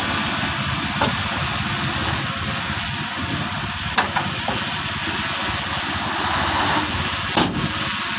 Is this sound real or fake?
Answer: real